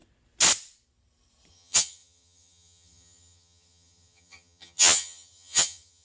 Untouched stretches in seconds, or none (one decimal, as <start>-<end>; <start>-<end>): 0.0-1.5